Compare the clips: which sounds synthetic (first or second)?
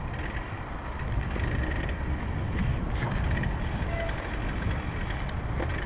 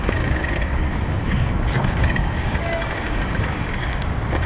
second